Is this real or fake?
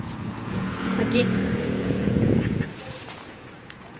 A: fake